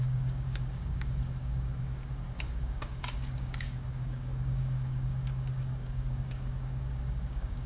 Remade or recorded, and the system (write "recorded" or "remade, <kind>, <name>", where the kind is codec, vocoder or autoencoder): remade, codec, DAC